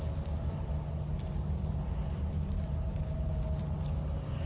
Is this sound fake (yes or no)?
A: no